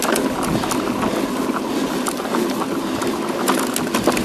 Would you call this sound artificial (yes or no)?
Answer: no